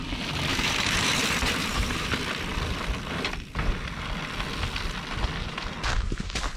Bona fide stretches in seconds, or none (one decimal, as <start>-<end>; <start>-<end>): 0.0-0.5; 2.1-6.6